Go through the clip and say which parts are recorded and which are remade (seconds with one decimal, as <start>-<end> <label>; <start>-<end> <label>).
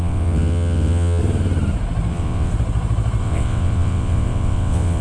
0.0-1.2 remade; 1.2-2.1 recorded; 2.1-2.5 remade; 2.5-3.2 recorded; 3.2-5.0 remade